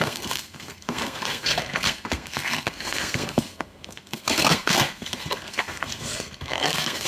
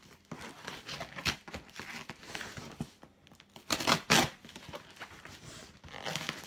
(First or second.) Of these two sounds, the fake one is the first